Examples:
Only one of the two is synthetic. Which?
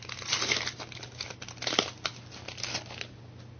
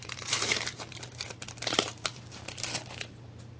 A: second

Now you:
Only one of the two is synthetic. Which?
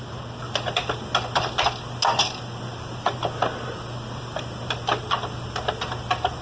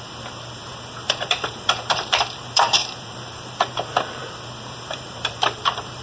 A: second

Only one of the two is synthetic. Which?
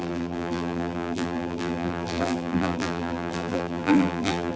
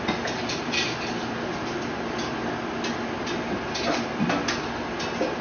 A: first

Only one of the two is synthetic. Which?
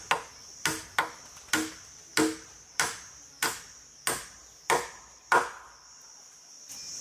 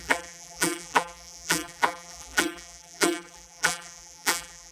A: second